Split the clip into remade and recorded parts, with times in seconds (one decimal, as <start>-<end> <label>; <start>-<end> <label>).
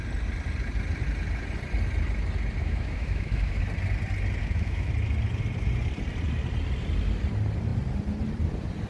0.0-2.6 recorded; 2.6-3.6 remade; 3.6-4.4 recorded; 4.4-4.9 remade; 4.9-8.9 recorded